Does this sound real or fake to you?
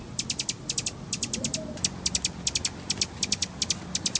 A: real